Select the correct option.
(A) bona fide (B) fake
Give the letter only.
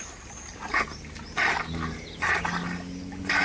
A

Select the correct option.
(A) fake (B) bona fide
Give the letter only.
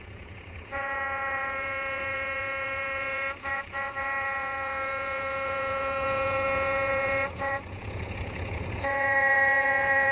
A